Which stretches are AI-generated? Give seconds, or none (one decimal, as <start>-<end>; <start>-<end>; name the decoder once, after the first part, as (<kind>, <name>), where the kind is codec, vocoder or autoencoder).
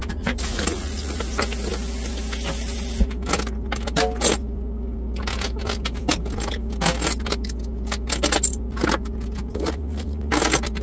0.0-1.2 (vocoder, Vocos); 9.5-10.3